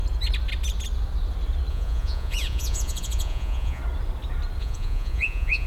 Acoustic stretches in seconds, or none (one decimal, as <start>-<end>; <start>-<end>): 0.0-1.7; 3.8-4.6